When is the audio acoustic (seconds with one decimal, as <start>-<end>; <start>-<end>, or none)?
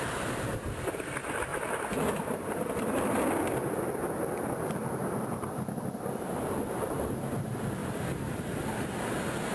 0.0-1.5; 3.3-5.0; 5.7-7.8; 8.8-9.5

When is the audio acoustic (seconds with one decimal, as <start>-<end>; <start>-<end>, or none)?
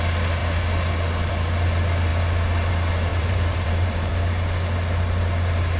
0.0-3.1; 4.1-5.8